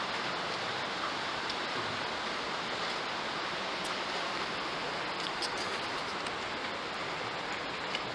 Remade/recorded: recorded